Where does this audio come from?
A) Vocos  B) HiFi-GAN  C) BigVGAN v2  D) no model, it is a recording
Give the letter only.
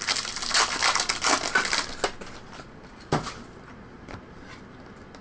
D